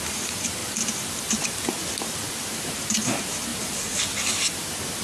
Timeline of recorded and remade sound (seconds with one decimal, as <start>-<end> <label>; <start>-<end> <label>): 0.0-5.0 remade